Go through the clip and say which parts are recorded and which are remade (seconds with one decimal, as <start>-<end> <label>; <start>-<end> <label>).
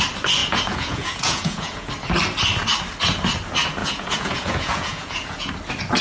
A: 0.0-0.4 recorded; 0.4-1.9 remade; 1.9-3.8 recorded; 3.8-5.5 remade; 5.5-6.0 recorded